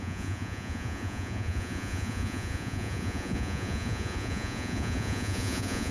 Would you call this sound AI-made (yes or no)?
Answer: yes